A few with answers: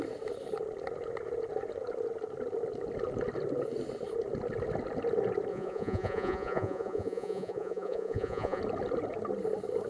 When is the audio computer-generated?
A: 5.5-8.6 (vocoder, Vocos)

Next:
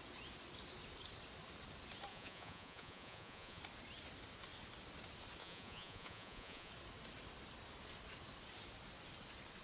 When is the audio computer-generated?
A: 2.1-3.6 (vocoder, Vocos); 5.4-6.7

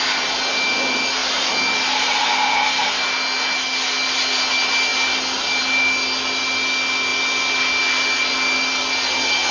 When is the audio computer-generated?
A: none